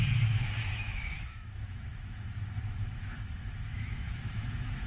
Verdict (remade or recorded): remade